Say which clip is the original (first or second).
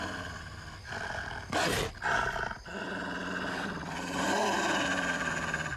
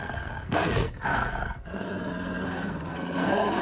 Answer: first